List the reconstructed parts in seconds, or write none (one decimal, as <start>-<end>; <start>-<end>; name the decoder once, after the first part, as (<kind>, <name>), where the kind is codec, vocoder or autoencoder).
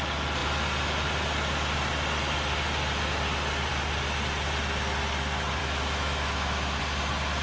5.6-6.8 (autoencoder, DAC-VAE)